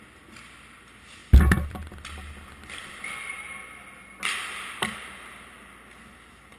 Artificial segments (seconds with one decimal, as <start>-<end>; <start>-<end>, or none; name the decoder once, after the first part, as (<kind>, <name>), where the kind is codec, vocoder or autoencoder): none